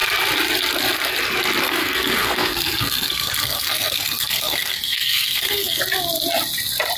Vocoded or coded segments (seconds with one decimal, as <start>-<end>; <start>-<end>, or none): 1.6-5.8